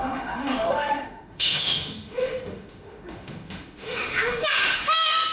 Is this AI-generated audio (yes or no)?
yes